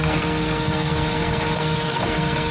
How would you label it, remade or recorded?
remade